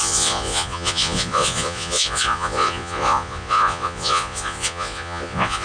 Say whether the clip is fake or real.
fake